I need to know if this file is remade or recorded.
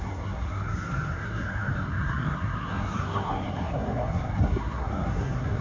remade